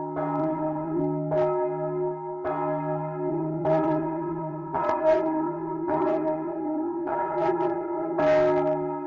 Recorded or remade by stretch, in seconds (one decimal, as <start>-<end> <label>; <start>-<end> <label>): 0.0-0.4 recorded; 0.4-1.0 remade; 1.0-3.3 recorded; 3.3-8.2 remade; 8.2-9.1 recorded